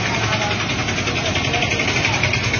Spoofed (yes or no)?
no